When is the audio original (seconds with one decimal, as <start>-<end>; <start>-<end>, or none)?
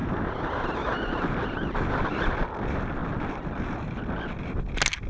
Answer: 2.3-5.1